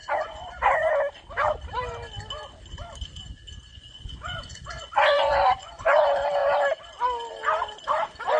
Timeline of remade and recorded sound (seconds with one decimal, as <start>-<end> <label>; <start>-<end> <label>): 0.0-0.9 remade; 0.9-3.7 recorded; 3.7-6.0 remade; 6.0-8.4 recorded